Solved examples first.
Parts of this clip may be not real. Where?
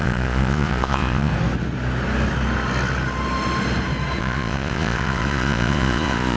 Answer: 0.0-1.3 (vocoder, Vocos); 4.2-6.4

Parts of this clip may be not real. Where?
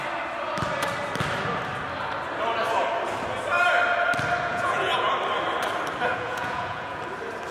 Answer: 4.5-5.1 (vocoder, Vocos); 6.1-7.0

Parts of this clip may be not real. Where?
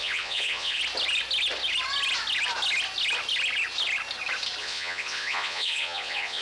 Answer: 0.0-0.8 (vocoder, Vocos); 4.6-6.4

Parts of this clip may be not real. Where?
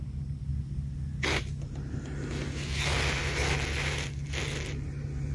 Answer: none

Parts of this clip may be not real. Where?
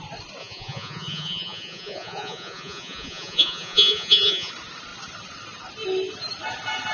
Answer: 0.4-4.5 (vocoder, Vocos)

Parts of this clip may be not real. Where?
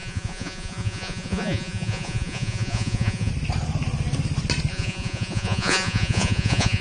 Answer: 0.0-3.3 (vocoder, Vocos); 4.7-6.8